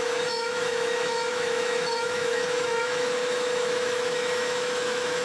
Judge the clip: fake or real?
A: fake